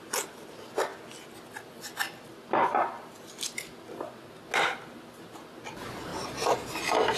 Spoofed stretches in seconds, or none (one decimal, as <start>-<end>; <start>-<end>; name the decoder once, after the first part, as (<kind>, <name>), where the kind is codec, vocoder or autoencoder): none